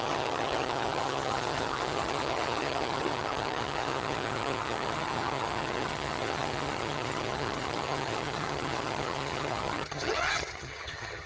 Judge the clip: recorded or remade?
remade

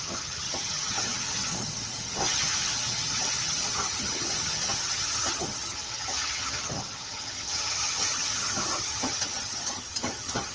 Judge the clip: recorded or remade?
remade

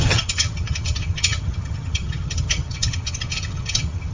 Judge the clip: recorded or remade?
remade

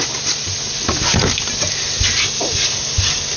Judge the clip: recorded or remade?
recorded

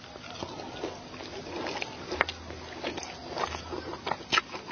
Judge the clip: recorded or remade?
recorded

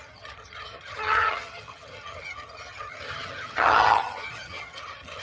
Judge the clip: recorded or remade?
remade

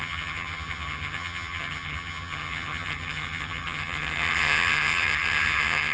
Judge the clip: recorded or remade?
remade